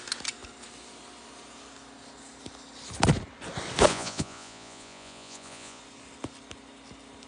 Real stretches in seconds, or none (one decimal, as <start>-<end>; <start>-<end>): 0.0-3.9; 5.8-7.3